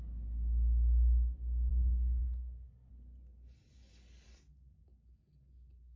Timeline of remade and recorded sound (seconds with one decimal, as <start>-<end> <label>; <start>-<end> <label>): 0.0-1.7 recorded; 1.7-2.9 remade; 2.9-6.0 recorded